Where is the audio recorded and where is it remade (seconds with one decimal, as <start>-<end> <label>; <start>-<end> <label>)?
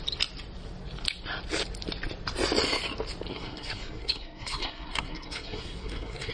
0.0-3.3 recorded; 3.3-6.3 remade